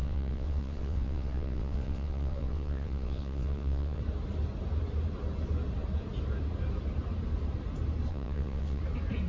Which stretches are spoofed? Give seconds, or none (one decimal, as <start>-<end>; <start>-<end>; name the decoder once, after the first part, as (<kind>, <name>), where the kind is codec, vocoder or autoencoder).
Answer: 0.0-4.0 (vocoder, WaveNeXt); 8.1-8.8